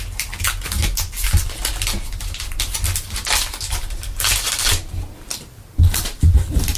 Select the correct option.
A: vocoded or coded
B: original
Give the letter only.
B